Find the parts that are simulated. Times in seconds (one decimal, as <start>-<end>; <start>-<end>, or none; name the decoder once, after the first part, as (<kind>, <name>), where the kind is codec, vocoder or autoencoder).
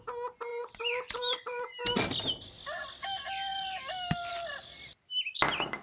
none